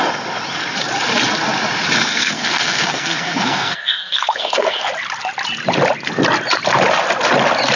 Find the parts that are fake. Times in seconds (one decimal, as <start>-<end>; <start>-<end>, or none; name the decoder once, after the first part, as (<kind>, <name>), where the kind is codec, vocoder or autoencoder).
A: 2.1-4.9 (codec, SNAC)